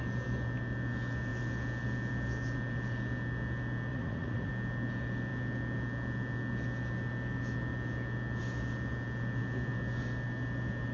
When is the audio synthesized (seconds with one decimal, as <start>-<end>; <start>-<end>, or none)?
3.9-4.5